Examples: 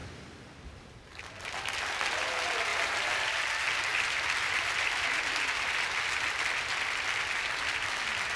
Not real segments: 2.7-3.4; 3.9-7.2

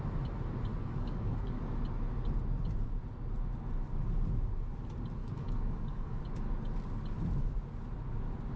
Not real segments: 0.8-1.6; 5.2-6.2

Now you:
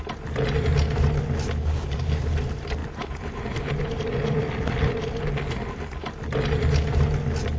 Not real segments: 2.8-4.0

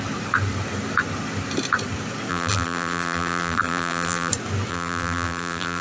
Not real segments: 2.3-4.3; 4.7-5.8

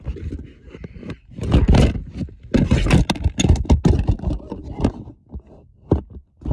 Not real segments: none

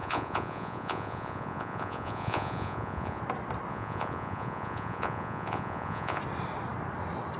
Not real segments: 0.0-3.2; 3.7-6.2

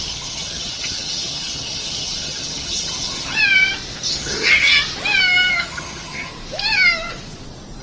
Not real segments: 0.0-3.4; 4.1-4.8; 5.5-6.3

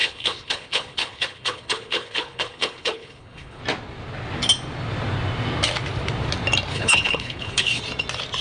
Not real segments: 0.0-3.6; 6.7-7.8